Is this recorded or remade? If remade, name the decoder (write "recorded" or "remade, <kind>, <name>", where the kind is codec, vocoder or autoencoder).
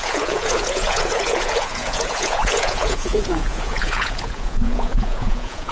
remade, vocoder, Vocos